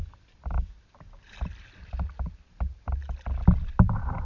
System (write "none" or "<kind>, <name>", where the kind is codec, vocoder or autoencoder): none